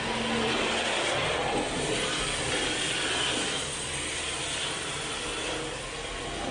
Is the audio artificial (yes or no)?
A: no